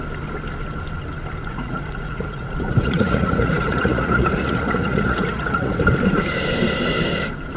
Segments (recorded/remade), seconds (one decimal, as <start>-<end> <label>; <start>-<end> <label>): 0.0-1.4 recorded; 1.4-5.8 remade; 5.8-7.6 recorded